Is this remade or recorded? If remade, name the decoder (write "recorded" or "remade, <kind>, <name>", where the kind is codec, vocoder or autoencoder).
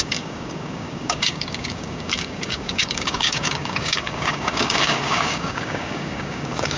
remade, codec, DAC